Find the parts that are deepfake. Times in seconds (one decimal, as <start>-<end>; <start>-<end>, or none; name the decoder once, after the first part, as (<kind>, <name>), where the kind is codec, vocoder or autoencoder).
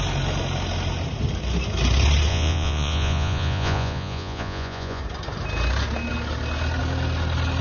2.3-5.0 (vocoder, Vocos)